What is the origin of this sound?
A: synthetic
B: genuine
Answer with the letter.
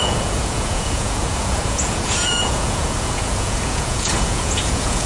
A